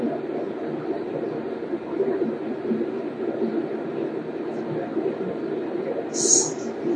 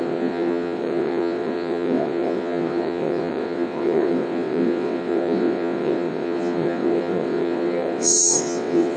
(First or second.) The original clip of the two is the first